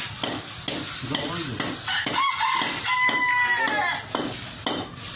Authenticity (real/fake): real